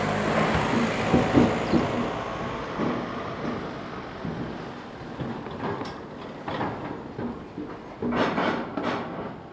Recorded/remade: recorded